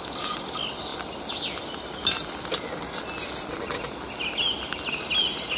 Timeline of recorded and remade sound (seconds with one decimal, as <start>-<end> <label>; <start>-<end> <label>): 0.0-5.6 recorded